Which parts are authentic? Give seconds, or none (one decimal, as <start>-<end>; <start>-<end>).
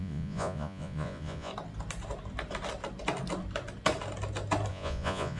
1.5-4.7